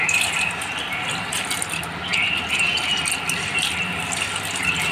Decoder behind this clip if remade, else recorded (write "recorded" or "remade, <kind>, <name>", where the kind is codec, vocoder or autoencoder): recorded